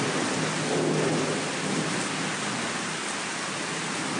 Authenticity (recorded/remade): recorded